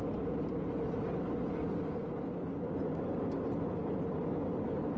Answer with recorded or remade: recorded